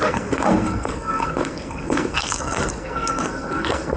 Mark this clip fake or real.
fake